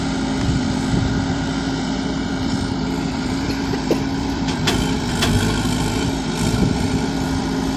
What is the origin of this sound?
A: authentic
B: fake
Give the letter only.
B